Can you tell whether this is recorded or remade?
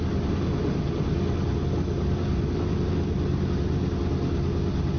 recorded